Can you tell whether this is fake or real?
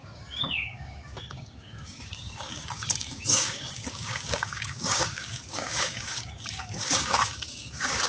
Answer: fake